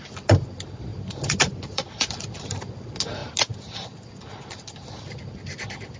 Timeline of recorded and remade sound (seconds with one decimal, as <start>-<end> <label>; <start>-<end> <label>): 0.0-0.9 recorded; 0.9-2.6 remade; 2.6-6.0 recorded